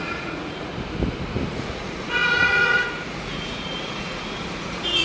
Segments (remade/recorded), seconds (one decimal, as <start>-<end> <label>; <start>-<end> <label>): 0.0-0.7 remade; 0.7-1.5 recorded; 1.5-5.0 remade